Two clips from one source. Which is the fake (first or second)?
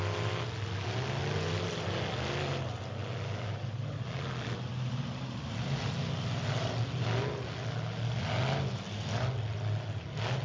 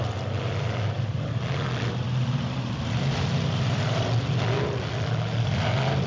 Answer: second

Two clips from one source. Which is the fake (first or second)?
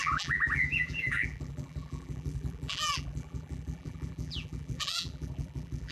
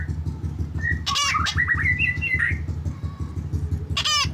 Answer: first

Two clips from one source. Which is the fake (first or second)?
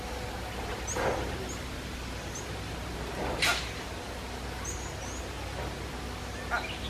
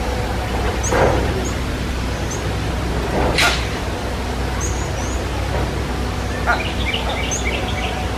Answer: first